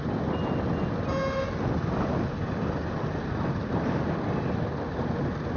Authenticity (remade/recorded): recorded